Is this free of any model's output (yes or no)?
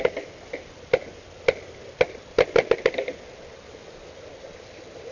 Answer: yes